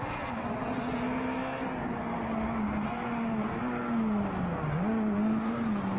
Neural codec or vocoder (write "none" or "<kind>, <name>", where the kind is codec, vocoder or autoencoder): none